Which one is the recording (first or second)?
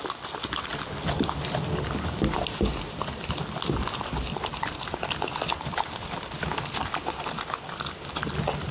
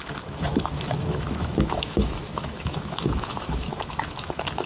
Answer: first